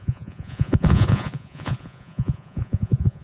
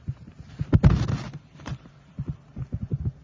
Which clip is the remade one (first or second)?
first